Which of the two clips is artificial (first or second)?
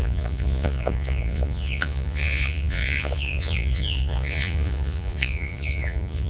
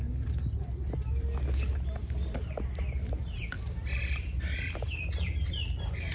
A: first